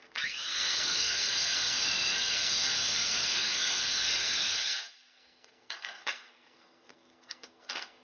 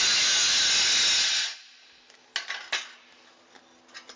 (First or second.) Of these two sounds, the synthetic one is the first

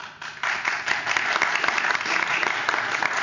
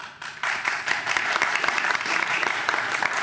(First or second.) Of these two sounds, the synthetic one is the second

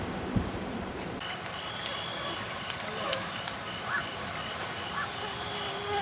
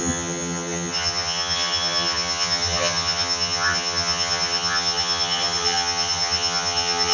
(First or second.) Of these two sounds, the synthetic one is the second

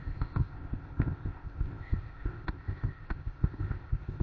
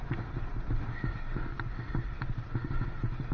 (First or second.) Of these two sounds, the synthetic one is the first